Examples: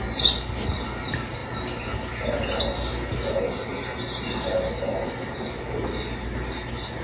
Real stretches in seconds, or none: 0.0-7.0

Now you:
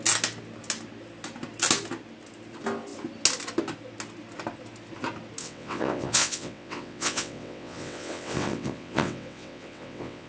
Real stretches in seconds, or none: 0.0-5.4